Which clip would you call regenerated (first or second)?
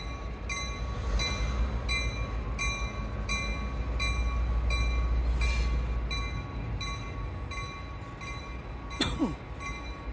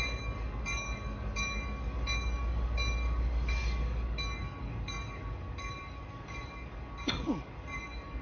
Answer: second